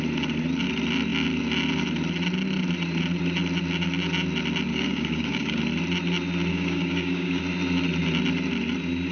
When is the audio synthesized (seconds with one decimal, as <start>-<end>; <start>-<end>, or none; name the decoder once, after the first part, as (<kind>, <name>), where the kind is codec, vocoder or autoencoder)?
4.7-5.6 (codec, DAC); 6.5-7.4